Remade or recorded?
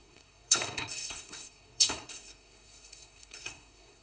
remade